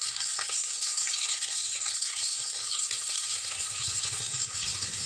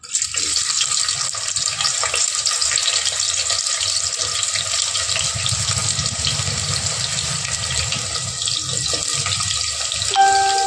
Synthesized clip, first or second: first